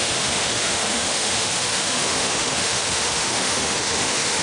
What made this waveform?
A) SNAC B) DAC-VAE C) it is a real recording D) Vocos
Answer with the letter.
B